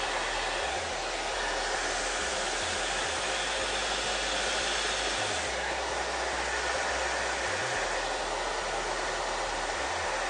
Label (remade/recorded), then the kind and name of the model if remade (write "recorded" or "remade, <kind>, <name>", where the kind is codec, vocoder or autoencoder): recorded